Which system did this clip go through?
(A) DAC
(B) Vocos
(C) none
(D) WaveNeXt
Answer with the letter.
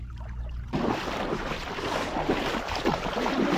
C